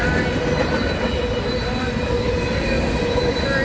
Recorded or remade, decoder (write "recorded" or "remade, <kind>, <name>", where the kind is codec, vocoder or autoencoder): recorded